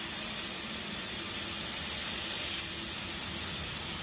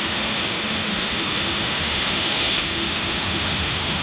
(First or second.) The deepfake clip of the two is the second